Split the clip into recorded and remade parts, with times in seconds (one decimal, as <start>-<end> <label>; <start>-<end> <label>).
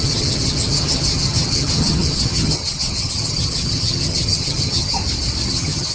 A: 0.0-5.0 remade; 5.0-5.5 recorded; 5.5-5.9 remade